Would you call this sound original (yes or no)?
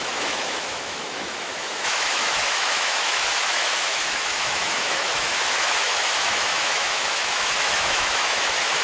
no